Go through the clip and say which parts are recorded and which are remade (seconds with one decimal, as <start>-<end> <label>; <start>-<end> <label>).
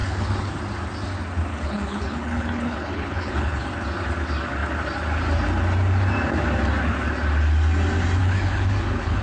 0.0-0.6 remade; 0.6-1.5 recorded; 1.5-3.6 remade; 3.6-8.2 recorded; 8.2-9.2 remade